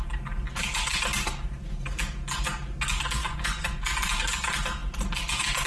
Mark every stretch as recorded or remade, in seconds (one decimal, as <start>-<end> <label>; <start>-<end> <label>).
0.0-3.2 recorded; 3.2-3.8 remade; 3.8-5.7 recorded